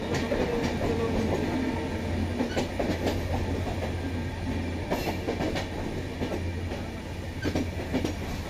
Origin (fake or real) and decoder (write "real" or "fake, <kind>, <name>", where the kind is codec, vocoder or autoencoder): real